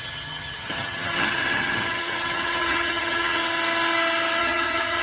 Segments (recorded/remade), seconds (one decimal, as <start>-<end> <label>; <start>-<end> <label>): 0.0-3.4 remade; 3.4-4.4 recorded; 4.4-5.0 remade